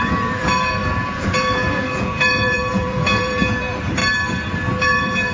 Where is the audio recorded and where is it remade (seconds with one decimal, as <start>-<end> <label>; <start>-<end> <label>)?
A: 0.0-4.0 remade; 4.0-4.8 recorded; 4.8-5.3 remade